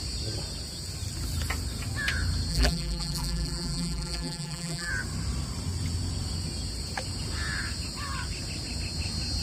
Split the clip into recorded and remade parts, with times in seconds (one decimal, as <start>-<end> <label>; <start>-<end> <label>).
0.0-2.5 recorded; 2.5-4.9 remade; 4.9-9.4 recorded